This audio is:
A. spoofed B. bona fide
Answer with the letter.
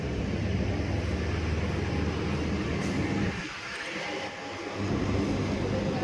B